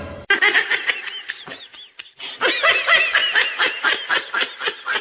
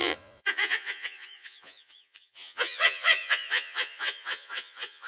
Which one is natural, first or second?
first